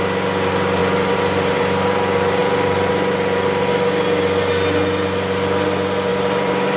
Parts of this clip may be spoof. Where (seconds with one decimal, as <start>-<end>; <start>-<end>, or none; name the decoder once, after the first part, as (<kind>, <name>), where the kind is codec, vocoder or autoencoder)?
2.4-2.9 (vocoder, BigVGAN v2); 6.1-6.8